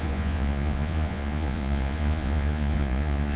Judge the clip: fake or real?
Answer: fake